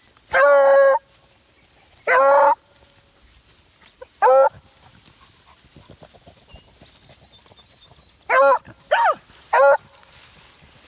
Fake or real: real